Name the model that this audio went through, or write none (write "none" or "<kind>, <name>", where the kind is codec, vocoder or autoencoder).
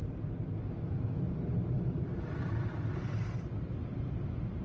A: none